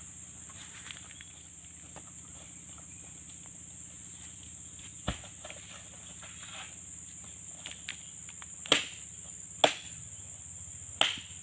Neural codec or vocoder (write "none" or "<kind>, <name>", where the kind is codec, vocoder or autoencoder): none